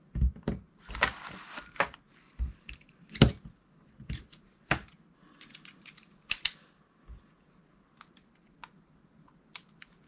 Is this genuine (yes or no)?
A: yes